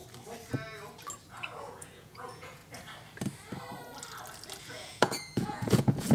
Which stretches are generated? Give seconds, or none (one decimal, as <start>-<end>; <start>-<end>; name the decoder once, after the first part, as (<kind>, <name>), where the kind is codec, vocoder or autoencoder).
1.6-2.6 (vocoder, Vocos); 4.6-6.1